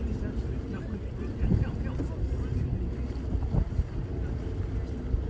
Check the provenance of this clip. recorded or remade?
recorded